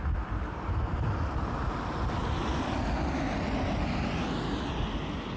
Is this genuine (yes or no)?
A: yes